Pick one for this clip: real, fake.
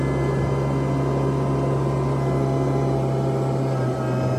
real